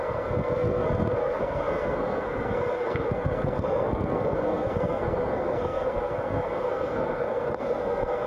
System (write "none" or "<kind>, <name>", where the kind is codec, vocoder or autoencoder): codec, SNAC